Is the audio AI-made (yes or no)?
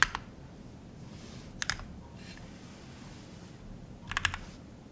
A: no